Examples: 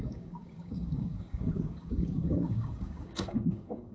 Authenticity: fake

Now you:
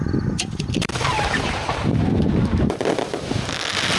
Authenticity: fake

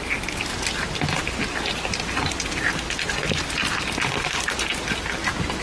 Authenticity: real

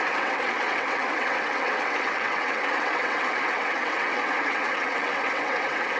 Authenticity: fake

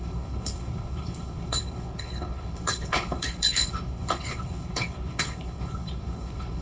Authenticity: fake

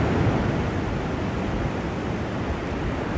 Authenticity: real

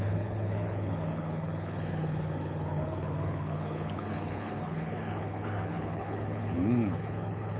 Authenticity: fake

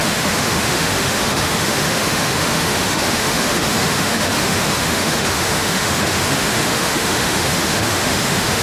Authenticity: fake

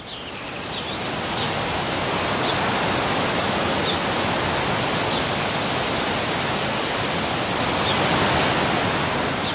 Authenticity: real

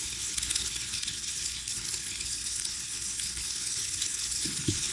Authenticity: fake